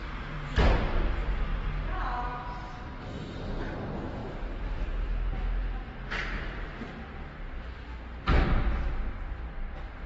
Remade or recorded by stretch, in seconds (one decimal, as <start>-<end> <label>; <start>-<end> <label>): 0.0-0.5 remade; 0.5-4.2 recorded; 4.2-7.8 remade; 7.8-10.1 recorded